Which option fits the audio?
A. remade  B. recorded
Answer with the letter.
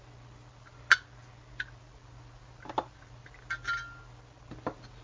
B